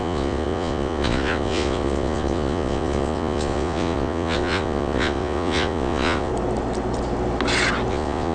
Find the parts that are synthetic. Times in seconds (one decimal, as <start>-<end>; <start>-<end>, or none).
0.0-6.3; 7.9-8.3